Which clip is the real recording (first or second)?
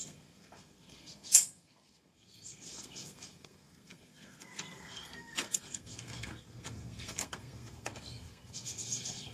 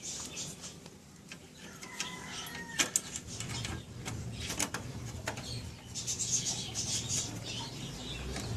second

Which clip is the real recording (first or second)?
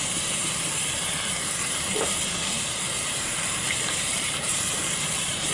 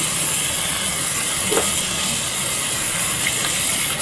second